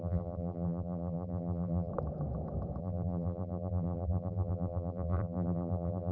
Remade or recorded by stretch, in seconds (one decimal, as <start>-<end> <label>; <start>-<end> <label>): 0.0-1.9 remade; 1.9-2.8 recorded; 2.8-6.1 remade